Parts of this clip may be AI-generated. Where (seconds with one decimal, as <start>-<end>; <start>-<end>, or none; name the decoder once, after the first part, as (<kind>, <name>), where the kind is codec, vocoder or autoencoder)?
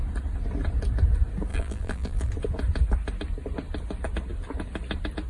1.5-2.3 (vocoder, BigVGAN v2)